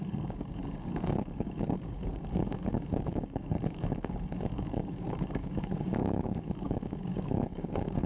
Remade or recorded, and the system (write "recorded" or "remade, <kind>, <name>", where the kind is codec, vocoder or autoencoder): remade, codec, DAC